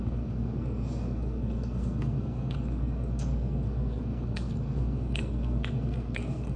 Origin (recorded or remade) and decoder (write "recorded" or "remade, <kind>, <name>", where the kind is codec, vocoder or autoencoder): remade, codec, SNAC